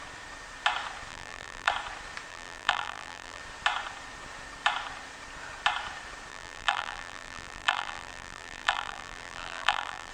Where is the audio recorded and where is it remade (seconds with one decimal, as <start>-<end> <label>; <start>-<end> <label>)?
0.0-1.1 recorded; 1.1-1.7 remade; 1.7-2.3 recorded; 2.3-3.4 remade; 3.4-6.3 recorded; 6.3-10.1 remade